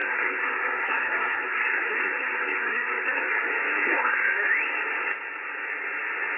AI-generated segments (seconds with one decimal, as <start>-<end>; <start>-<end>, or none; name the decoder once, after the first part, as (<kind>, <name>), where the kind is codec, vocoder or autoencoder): 0.0-3.5 (codec, SNAC); 3.9-4.5